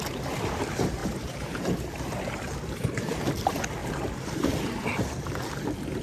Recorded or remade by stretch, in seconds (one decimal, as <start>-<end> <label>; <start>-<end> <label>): 0.0-1.0 recorded; 1.0-3.2 remade; 3.2-3.8 recorded; 3.8-4.5 remade; 4.5-6.0 recorded

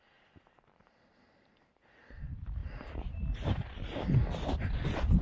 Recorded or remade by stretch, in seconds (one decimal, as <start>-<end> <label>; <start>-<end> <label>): 0.0-5.2 recorded